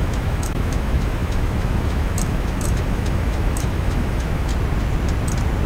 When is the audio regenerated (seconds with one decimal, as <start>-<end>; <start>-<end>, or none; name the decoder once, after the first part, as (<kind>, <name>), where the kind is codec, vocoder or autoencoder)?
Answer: 0.0-4.5 (autoencoder, DAC-VAE)